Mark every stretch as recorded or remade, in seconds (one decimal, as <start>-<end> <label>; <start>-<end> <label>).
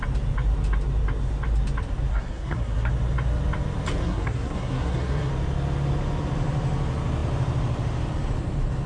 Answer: 0.0-2.1 recorded; 2.1-2.9 remade; 2.9-4.0 recorded; 4.0-5.3 remade; 5.3-8.9 recorded